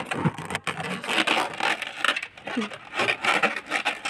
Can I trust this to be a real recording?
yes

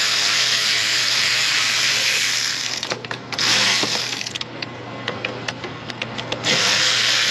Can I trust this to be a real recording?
no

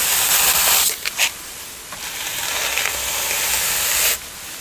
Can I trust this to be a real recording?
yes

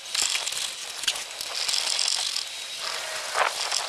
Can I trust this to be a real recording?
yes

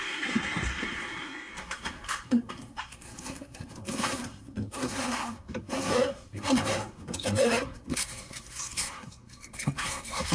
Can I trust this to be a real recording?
no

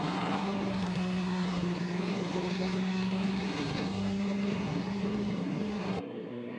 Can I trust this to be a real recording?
no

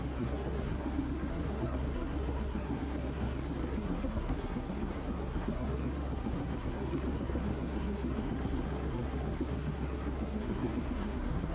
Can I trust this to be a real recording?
no